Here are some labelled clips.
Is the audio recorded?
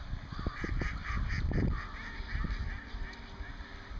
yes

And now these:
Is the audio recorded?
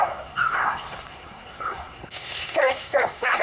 no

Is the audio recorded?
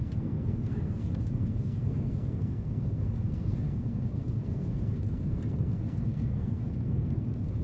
no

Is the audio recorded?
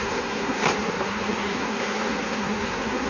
no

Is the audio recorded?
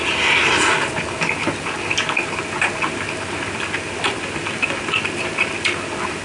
yes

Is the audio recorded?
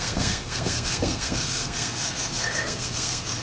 no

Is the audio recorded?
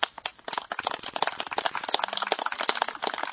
yes